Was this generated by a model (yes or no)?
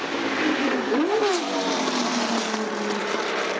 yes